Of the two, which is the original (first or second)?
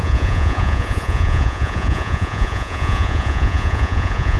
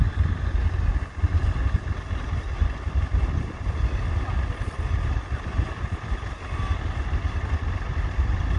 second